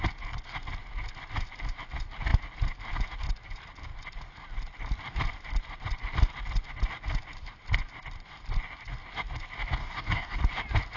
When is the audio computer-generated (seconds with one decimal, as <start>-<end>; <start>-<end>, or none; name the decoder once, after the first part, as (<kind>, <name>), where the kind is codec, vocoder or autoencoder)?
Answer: 9.8-10.4 (codec, DAC)